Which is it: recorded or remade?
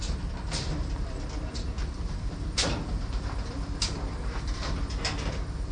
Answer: recorded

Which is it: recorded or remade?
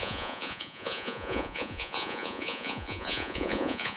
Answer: remade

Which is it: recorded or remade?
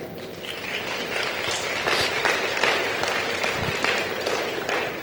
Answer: remade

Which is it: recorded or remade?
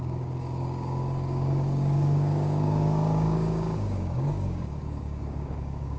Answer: remade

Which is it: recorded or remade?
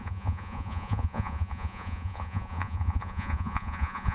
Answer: remade